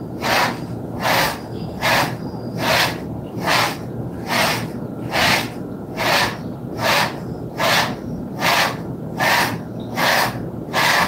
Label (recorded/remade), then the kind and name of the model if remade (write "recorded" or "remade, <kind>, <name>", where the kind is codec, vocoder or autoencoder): recorded